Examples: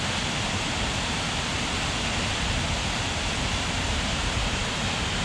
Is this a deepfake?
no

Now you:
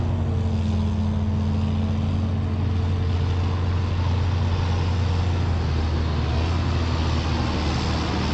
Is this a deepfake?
no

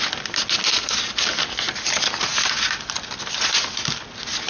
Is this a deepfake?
no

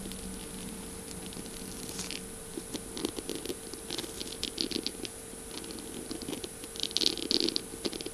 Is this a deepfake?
no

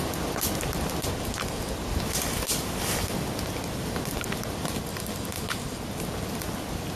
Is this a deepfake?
no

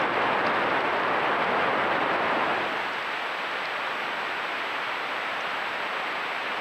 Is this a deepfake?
no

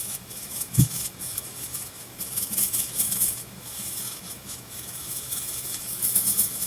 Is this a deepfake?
yes